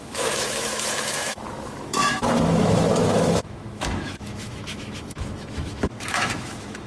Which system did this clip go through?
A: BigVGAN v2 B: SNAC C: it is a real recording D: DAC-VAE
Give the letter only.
D